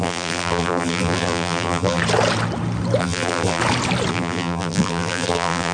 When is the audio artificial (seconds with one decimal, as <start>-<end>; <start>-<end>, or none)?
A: 0.0-2.0; 3.0-3.6; 4.1-5.7